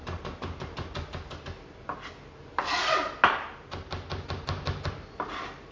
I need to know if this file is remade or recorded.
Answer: recorded